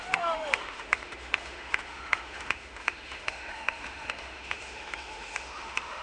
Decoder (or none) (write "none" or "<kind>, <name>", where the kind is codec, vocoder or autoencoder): autoencoder, DAC-VAE